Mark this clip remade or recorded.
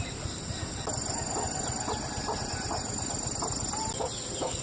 recorded